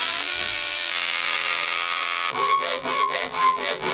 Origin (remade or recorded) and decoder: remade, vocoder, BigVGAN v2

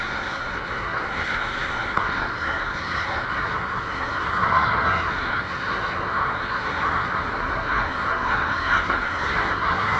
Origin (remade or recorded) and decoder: remade, codec, SNAC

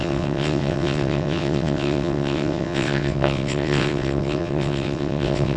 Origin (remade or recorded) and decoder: remade, vocoder, WaveNeXt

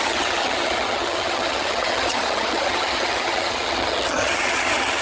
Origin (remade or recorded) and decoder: remade, vocoder, HiFi-GAN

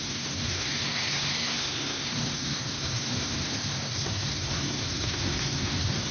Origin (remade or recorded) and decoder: remade, codec, SNAC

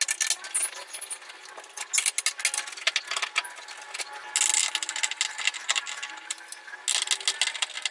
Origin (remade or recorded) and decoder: recorded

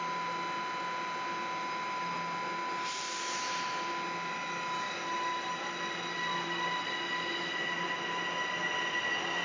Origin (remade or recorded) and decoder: recorded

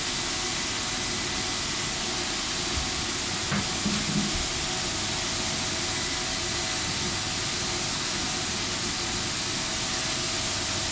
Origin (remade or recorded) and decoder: recorded